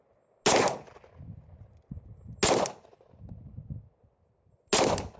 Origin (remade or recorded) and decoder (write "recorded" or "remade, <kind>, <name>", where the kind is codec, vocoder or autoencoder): recorded